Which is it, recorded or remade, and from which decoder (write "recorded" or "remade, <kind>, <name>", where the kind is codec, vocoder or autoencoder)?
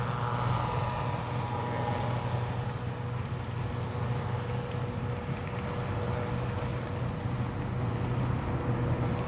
recorded